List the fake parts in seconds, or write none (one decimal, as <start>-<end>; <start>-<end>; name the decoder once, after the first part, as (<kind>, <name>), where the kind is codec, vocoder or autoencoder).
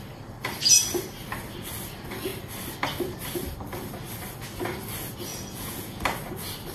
5.3-6.0 (vocoder, Vocos)